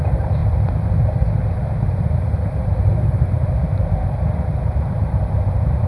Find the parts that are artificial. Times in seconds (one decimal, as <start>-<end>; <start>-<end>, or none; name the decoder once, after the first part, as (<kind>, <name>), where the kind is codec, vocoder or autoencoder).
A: 0.0-5.9 (vocoder, BigVGAN v2)